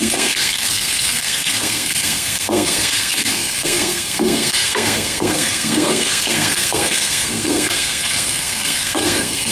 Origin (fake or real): fake